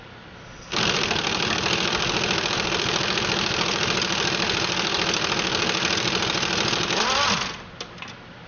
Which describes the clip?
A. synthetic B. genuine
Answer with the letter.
B